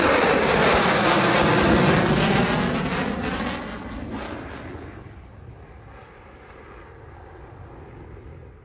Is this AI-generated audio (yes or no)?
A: no